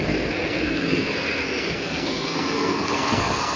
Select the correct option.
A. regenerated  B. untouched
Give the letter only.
A